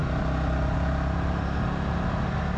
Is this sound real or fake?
real